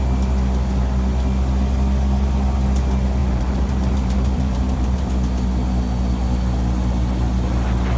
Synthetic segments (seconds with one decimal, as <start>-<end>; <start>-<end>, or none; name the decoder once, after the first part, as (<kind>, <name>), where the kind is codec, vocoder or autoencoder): 3.2-5.1 (vocoder, BigVGAN v2)